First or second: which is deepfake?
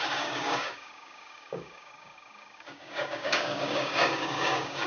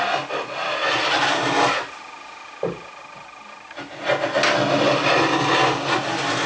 first